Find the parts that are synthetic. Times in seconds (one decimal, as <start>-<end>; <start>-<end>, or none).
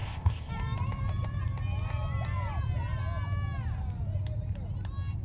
0.0-0.5